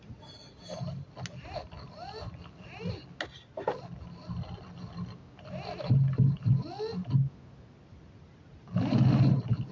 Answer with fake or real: real